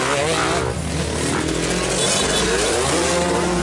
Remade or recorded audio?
recorded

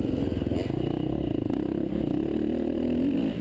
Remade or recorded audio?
recorded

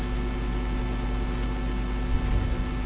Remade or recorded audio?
recorded